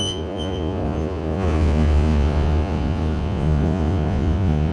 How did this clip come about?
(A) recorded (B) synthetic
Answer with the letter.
B